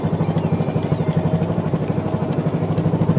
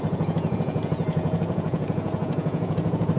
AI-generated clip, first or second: second